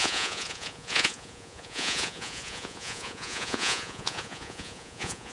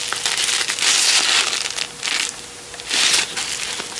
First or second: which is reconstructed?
first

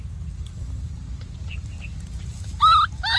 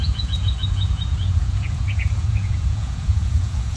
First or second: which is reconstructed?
second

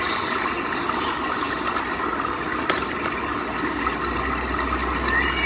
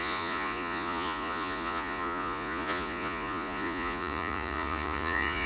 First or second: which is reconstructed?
second